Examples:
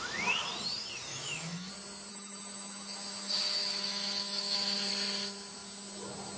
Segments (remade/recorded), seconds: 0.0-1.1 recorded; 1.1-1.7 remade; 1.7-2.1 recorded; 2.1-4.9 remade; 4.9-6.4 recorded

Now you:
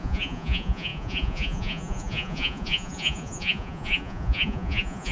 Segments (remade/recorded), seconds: 0.0-5.1 remade

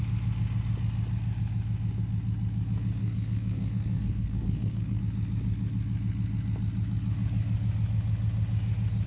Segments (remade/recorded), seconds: 0.0-3.0 recorded; 3.0-5.0 remade; 5.0-9.1 recorded

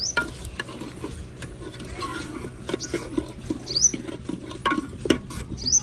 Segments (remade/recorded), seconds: 0.0-5.8 recorded

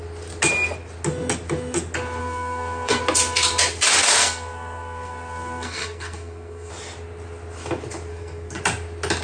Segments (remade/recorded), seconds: 0.0-2.2 recorded; 2.2-3.0 remade; 3.0-4.2 recorded; 4.2-6.7 remade; 6.7-8.1 recorded; 8.1-8.6 remade; 8.6-9.2 recorded